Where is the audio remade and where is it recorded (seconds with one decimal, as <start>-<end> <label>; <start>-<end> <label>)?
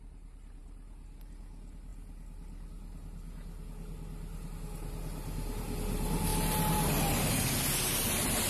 0.0-8.5 recorded